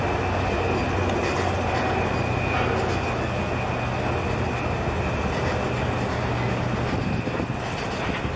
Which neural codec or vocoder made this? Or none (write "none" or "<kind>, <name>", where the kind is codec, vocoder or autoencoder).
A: none